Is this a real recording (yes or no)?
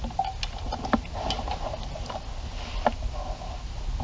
yes